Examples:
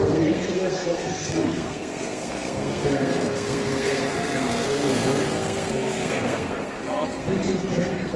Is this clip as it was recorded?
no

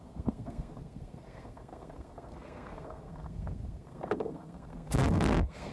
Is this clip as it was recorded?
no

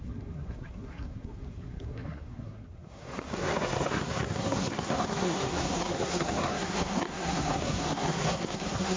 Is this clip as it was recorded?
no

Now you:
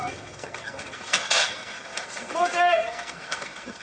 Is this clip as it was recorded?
no